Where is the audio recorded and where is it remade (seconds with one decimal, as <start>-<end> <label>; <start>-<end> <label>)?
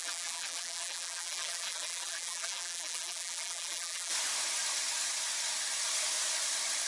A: 0.0-4.1 remade; 4.1-6.9 recorded